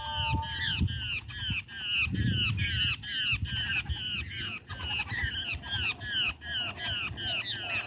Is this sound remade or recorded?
recorded